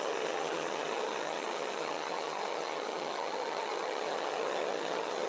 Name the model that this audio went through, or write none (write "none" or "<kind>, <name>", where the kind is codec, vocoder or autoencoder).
vocoder, HiFi-GAN